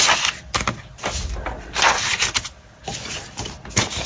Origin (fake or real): real